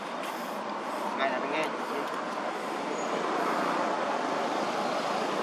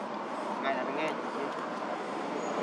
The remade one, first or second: first